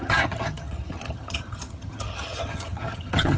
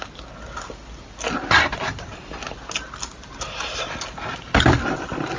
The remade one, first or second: first